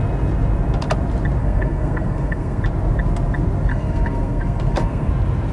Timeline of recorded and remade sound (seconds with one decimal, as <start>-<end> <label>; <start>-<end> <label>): 0.0-1.4 recorded; 1.4-2.6 remade; 2.6-3.7 recorded; 3.7-5.1 remade; 5.1-5.5 recorded